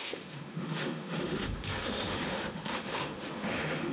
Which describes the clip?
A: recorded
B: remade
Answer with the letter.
B